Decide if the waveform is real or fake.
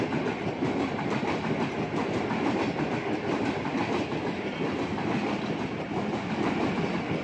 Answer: real